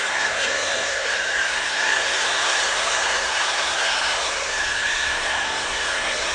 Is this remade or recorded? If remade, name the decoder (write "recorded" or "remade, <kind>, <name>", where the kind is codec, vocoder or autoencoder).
remade, codec, SNAC